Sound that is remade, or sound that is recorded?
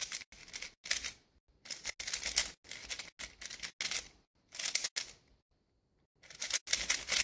recorded